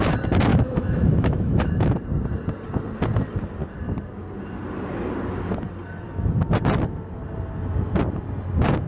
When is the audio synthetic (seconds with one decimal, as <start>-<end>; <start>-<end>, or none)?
0.5-2.0